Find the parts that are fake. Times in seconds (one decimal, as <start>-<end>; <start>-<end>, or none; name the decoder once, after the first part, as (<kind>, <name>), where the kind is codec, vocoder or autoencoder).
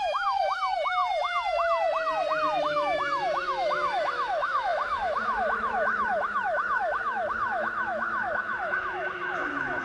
0.0-1.0 (autoencoder, DAC-VAE); 2.6-9.8